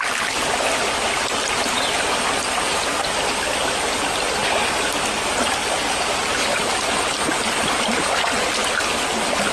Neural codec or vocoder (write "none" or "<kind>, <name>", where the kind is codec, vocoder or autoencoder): none